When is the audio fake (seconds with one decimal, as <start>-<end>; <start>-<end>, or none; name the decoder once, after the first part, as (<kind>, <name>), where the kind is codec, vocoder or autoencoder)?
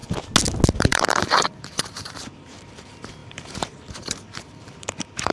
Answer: 0.8-5.3 (vocoder, BigVGAN v2)